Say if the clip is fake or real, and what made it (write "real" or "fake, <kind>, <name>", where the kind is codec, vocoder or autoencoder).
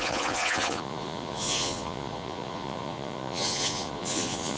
fake, vocoder, Vocos